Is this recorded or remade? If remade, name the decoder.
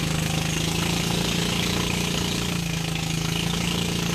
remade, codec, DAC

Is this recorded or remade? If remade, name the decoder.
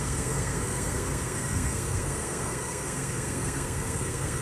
remade, codec, SNAC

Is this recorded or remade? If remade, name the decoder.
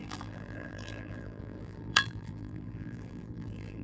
remade, vocoder, BigVGAN v2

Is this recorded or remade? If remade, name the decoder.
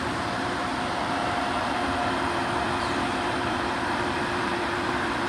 remade, vocoder, BigVGAN v2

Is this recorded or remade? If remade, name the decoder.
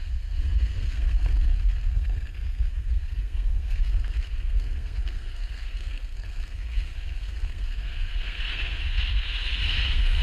remade, codec, SNAC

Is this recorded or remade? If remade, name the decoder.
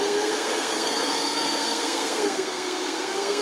remade, codec, SNAC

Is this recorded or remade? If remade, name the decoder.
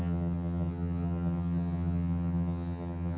remade, vocoder, HiFi-GAN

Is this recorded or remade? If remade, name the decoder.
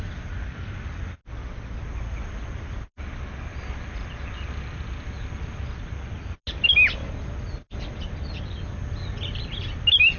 recorded